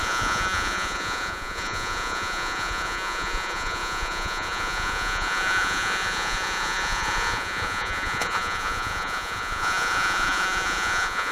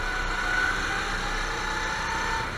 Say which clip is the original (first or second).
second